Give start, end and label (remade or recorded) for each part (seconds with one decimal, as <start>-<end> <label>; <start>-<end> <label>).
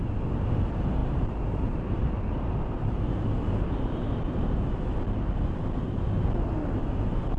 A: 0.0-1.0 recorded; 1.0-3.0 remade; 3.0-7.4 recorded